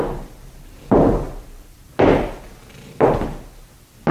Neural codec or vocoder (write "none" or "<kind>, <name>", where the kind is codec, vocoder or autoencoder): none